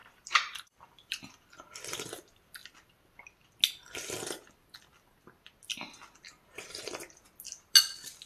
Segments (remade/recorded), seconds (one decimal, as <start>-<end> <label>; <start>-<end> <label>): 0.0-1.3 remade; 1.3-8.3 recorded